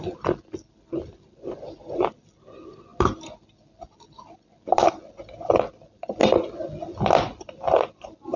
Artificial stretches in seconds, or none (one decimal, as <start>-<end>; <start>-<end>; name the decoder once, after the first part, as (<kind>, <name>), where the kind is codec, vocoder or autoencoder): none